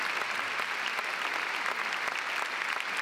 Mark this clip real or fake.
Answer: real